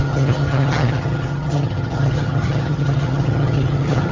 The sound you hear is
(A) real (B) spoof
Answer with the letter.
B